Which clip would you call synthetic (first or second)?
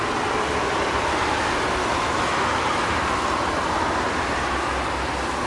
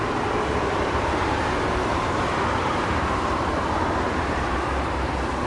second